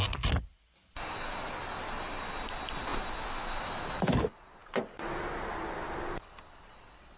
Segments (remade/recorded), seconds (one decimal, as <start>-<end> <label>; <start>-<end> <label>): 0.0-7.2 recorded